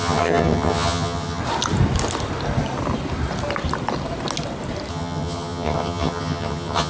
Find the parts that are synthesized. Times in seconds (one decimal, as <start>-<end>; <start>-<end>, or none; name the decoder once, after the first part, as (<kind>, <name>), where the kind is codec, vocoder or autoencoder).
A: 0.0-1.4 (vocoder, HiFi-GAN); 4.9-6.9